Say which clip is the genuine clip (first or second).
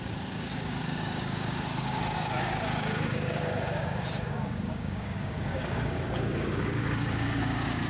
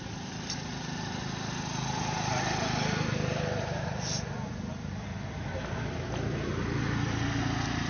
second